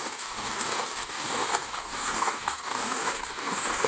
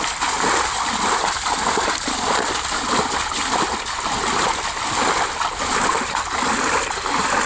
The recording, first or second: second